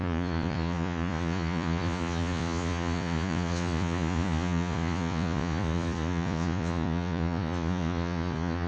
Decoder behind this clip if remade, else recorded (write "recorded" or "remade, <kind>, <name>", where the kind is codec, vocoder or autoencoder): remade, vocoder, Vocos